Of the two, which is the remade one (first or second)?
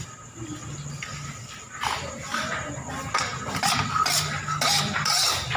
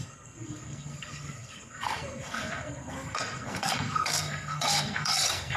second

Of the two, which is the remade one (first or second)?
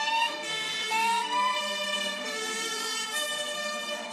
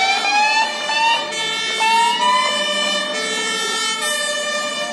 first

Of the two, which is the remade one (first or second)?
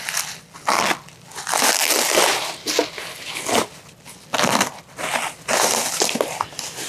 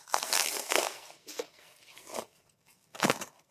second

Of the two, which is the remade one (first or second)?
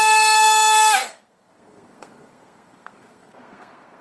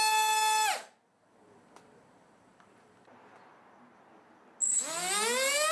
first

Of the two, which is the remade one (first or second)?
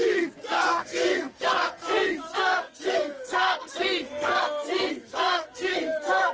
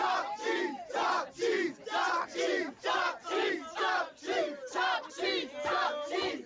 first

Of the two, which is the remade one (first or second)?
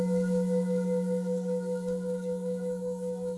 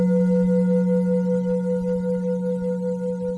first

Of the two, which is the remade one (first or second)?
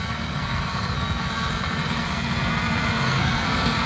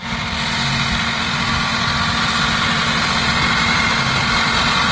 first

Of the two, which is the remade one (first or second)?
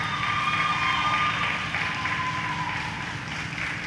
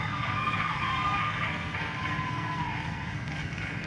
second